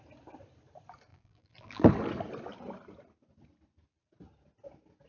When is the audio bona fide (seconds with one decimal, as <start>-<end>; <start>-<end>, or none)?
0.0-1.1; 1.9-5.1